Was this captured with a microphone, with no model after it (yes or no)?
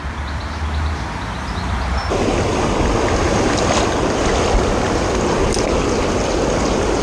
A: yes